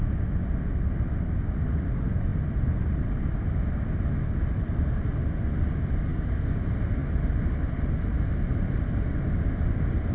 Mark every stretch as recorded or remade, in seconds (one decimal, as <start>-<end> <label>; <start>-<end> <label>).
0.0-6.1 recorded; 6.1-6.6 remade; 6.6-10.1 recorded